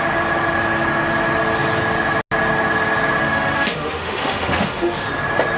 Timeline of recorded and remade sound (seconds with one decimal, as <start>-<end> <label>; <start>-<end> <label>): 0.0-3.2 recorded; 3.2-5.1 remade; 5.1-5.6 recorded